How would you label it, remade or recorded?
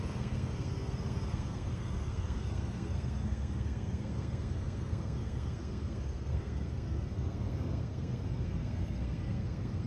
remade